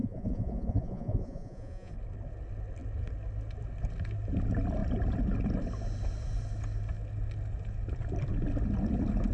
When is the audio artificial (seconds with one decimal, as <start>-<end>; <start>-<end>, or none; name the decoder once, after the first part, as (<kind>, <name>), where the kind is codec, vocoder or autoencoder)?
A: 0.0-1.9 (vocoder, Vocos)